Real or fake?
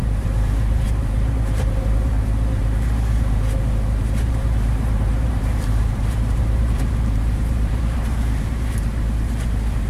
fake